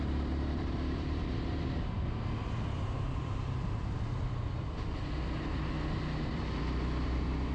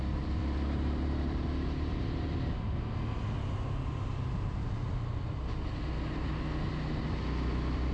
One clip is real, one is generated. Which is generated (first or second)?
first